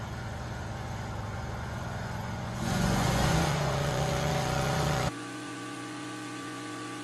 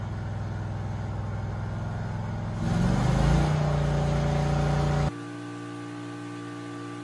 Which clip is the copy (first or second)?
first